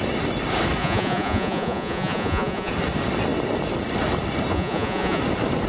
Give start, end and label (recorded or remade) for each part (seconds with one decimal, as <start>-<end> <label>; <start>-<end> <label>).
0.0-0.8 recorded; 0.8-2.7 remade; 2.7-4.5 recorded; 4.5-5.2 remade; 5.2-5.7 recorded